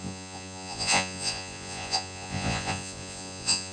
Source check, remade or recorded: remade